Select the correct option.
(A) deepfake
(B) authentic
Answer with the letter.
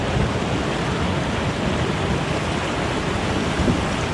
B